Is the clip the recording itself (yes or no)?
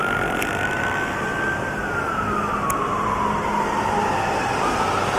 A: yes